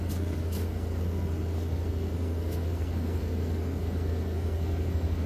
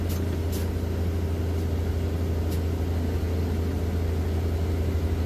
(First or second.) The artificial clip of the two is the first